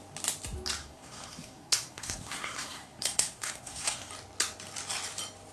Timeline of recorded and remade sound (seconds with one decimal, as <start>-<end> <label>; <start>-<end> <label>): 0.0-0.8 recorded; 0.8-4.1 remade; 4.1-5.5 recorded